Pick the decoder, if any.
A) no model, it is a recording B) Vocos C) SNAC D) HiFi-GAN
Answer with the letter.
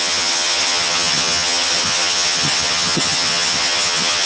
D